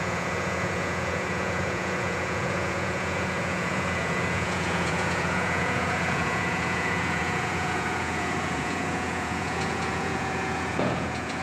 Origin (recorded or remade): remade